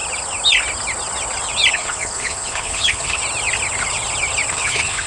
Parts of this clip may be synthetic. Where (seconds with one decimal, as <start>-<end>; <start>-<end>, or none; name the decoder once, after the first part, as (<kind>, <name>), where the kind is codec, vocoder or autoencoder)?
1.7-3.2 (codec, HILCodec); 4.5-5.1